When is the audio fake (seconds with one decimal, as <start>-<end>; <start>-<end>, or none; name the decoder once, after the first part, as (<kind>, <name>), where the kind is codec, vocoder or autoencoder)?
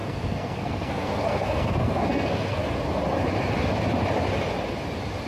0.0-2.6 (codec, SNAC)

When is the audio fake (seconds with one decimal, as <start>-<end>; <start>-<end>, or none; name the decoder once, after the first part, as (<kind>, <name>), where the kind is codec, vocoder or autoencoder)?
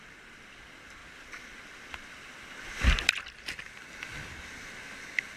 none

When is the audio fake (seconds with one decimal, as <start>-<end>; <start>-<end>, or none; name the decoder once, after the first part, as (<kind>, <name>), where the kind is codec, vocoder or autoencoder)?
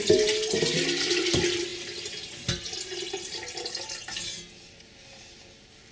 none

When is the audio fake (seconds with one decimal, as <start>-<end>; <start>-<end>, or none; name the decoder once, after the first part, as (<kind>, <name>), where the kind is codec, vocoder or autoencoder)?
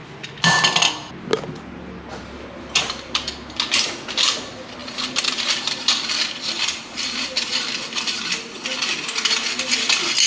none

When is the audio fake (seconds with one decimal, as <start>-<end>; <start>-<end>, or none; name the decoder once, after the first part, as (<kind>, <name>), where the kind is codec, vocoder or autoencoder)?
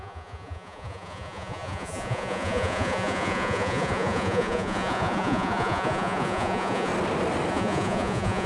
0.0-6.9 (vocoder, Vocos); 7.5-8.5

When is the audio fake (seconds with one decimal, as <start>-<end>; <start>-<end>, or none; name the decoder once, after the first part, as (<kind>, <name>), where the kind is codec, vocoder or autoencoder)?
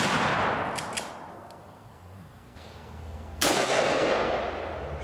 1.3-4.3 (codec, SNAC)